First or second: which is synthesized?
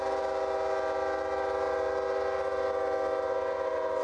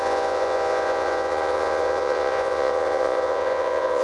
second